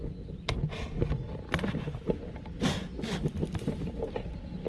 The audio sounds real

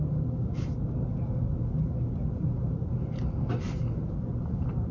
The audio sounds real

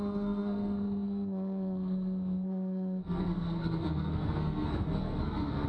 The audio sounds fake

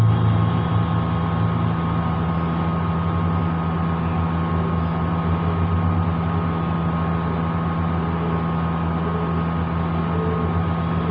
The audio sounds real